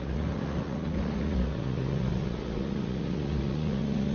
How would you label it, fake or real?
fake